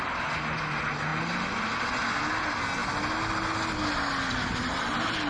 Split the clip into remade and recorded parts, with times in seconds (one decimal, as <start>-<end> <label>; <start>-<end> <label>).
0.0-5.3 recorded